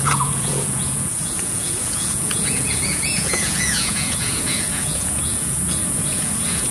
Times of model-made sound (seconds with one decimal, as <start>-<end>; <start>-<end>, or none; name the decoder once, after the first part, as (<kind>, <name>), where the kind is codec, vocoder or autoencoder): 0.0-6.7 (vocoder, Vocos)